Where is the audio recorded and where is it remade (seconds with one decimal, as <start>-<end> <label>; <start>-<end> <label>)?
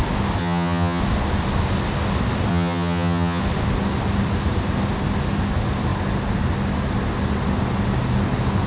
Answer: 0.0-0.4 recorded; 0.4-1.0 remade; 1.0-2.5 recorded; 2.5-3.4 remade; 3.4-8.7 recorded